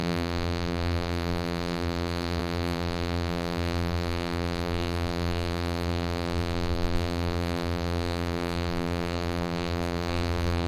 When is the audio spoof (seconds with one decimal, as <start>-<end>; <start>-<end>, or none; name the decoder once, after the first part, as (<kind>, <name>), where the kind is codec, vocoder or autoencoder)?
0.0-10.7 (vocoder, BigVGAN v2)